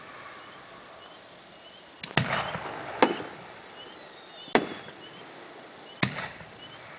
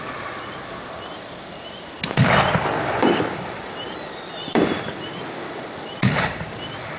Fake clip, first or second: second